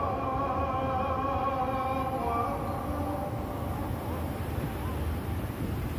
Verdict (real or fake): real